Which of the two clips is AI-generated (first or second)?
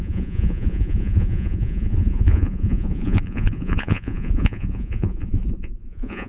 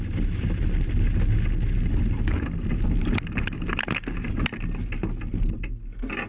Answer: first